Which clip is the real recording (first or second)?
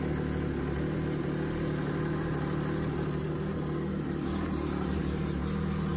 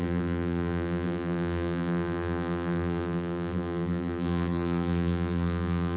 first